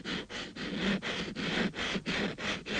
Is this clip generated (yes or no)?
no